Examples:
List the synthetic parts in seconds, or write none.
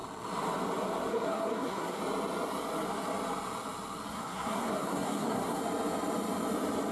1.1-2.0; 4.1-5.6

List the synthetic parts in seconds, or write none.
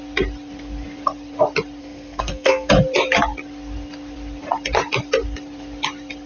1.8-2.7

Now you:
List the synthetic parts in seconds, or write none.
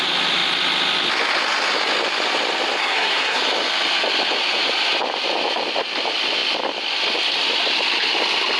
2.8-3.4